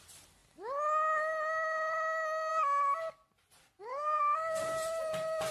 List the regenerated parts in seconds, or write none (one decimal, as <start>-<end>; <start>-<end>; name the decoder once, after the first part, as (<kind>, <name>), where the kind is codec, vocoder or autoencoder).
3.9-4.6 (codec, SNAC)